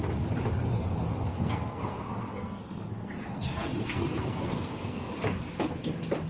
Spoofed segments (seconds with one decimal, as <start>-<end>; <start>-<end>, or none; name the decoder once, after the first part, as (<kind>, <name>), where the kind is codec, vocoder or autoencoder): 1.3-5.1 (codec, SNAC)